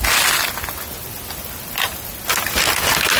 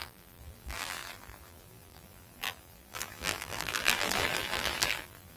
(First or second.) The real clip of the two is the first